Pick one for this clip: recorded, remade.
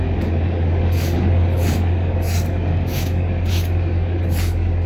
remade